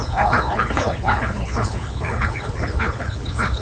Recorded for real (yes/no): no